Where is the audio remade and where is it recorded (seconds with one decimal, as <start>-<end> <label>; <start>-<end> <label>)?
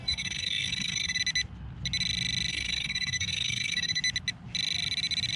0.0-1.2 remade; 1.2-2.5 recorded; 2.5-4.0 remade; 4.0-5.4 recorded